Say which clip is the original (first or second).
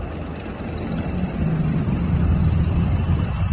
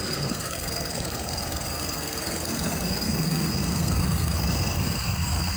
first